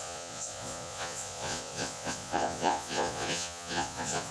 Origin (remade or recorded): remade